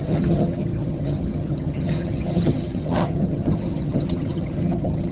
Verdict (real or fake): fake